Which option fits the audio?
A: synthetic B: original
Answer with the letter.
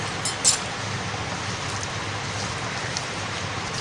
B